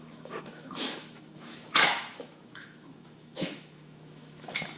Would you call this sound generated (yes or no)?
yes